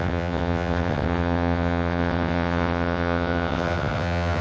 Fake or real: fake